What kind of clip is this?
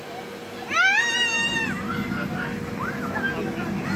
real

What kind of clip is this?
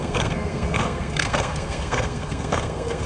fake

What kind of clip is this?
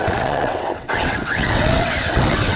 fake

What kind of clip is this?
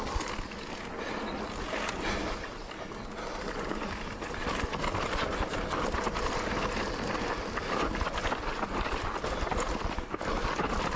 real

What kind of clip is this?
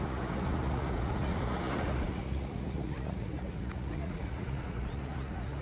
fake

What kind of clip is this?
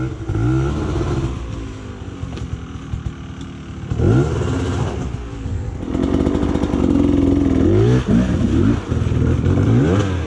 real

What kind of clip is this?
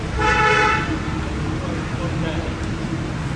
real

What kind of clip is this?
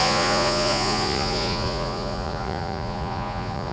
fake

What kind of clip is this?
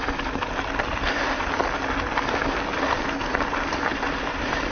real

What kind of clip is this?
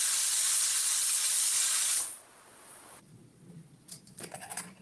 fake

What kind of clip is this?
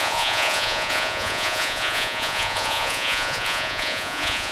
fake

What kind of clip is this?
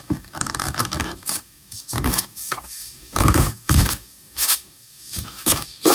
fake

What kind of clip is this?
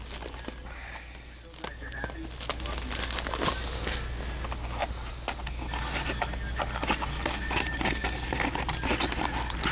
real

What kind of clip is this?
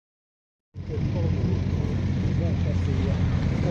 real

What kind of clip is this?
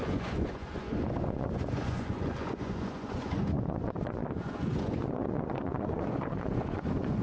fake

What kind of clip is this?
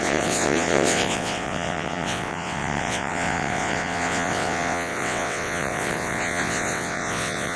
fake